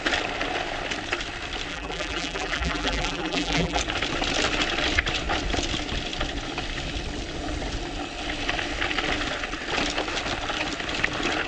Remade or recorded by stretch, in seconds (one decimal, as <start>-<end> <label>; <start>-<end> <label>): 0.0-1.7 recorded; 1.7-3.8 remade; 3.8-11.5 recorded